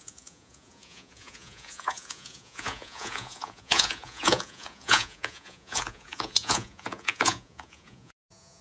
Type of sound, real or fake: fake